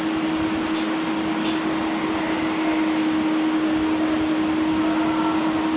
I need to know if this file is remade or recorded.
recorded